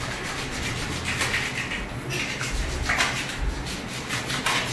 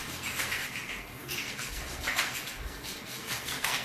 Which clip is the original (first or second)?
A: first